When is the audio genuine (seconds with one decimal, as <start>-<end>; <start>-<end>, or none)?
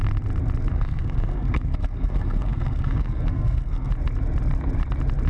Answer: 0.0-0.7; 3.9-5.3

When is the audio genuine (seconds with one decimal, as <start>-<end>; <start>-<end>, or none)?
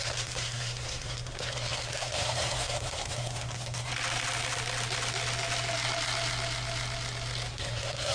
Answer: 3.9-7.5